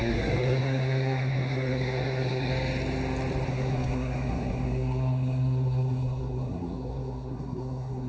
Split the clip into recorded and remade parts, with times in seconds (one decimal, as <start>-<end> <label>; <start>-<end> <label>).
0.0-2.5 remade; 2.5-3.5 recorded; 3.5-8.1 remade